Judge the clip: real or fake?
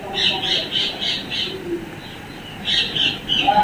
real